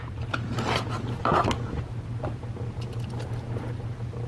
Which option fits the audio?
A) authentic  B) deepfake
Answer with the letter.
A